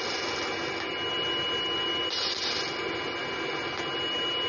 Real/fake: real